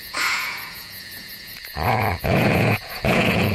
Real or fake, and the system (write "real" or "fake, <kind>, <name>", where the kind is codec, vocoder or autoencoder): fake, vocoder, Vocos